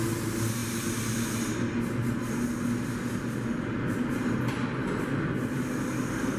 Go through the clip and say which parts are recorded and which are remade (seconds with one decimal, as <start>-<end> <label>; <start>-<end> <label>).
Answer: 0.0-6.4 recorded